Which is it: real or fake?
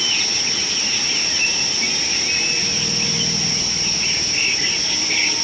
real